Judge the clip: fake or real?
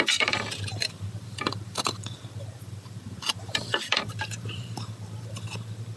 fake